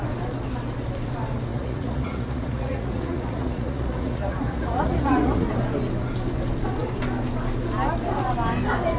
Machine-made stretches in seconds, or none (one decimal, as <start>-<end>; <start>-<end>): 1.5-5.5